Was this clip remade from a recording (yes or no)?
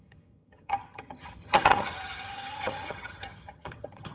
yes